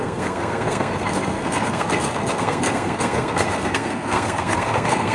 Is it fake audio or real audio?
fake